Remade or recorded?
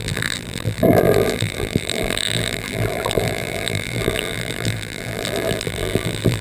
remade